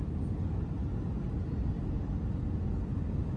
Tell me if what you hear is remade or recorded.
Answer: recorded